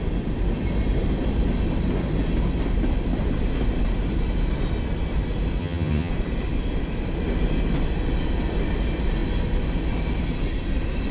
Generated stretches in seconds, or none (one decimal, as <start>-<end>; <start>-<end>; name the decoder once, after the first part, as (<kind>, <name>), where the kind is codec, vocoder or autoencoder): 5.6-6.1 (vocoder, HiFi-GAN)